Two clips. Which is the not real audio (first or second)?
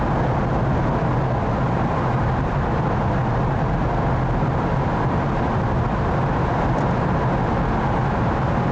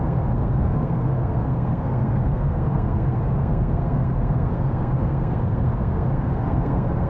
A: second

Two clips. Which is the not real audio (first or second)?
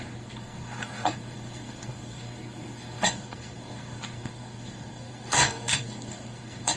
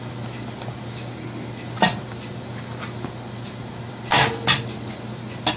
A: first